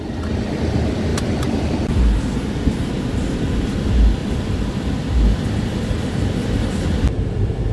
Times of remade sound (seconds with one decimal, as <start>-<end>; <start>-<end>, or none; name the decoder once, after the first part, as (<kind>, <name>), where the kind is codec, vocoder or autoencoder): 1.1-1.7 (vocoder, BigVGAN v2); 4.2-5.5